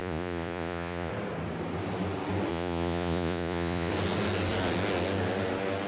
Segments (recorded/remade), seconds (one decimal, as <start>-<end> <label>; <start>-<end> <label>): 0.0-1.1 remade; 1.1-2.5 recorded; 2.5-3.9 remade; 3.9-5.9 recorded